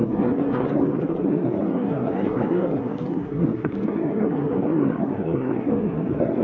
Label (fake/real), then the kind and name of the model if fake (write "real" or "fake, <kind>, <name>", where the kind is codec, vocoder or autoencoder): fake, codec, SNAC